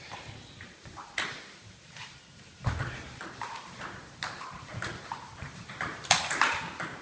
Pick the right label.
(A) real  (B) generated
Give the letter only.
B